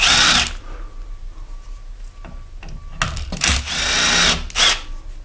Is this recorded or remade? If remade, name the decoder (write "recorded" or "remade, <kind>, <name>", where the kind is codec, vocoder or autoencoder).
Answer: recorded